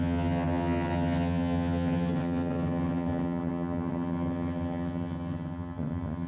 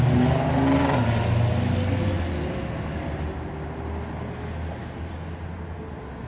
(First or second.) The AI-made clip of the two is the first